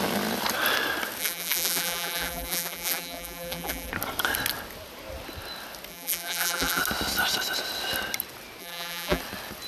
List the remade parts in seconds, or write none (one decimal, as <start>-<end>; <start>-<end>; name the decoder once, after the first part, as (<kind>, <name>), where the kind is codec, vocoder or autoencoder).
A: 1.2-3.9 (vocoder, BigVGAN v2); 5.9-6.8; 8.6-9.2